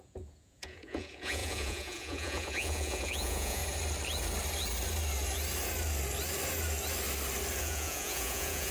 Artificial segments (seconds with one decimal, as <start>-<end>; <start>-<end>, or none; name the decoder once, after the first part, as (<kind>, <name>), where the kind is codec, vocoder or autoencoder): 0.0-3.6 (vocoder, Vocos); 7.6-8.7